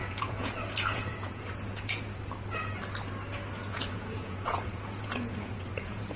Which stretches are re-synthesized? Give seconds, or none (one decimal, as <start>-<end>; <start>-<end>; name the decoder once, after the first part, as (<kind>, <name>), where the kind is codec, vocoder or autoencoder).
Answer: 0.0-2.2 (vocoder, Vocos); 3.6-6.2